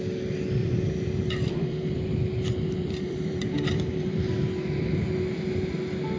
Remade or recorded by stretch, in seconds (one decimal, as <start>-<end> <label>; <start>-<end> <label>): 0.0-0.6 recorded; 0.6-4.3 remade; 4.3-6.2 recorded